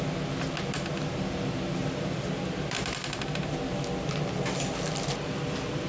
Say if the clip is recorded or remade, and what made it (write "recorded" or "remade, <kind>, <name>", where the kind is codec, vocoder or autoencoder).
recorded